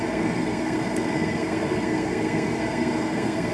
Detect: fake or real fake